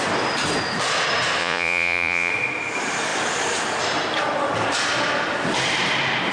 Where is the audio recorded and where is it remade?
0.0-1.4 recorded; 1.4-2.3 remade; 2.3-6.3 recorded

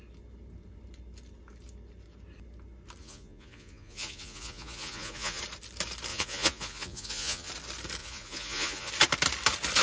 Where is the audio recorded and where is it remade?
0.0-3.0 recorded; 3.0-5.4 remade; 5.4-6.1 recorded; 6.1-7.5 remade; 7.5-8.0 recorded; 8.0-8.9 remade; 8.9-9.8 recorded